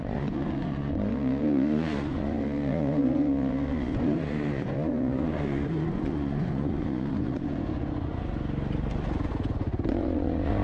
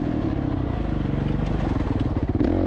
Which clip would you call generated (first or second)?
first